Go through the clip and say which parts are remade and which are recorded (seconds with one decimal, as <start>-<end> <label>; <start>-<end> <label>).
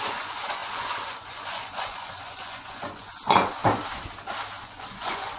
0.0-3.6 remade; 3.6-4.6 recorded; 4.6-5.4 remade